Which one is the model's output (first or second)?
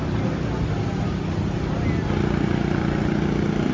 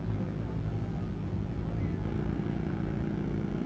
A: second